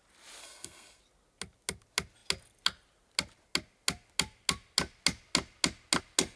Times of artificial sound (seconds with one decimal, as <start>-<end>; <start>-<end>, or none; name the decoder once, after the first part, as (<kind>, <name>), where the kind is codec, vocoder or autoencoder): 0.4-1.0 (codec, SNAC)